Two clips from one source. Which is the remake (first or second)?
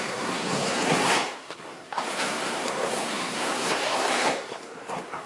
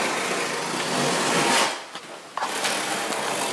first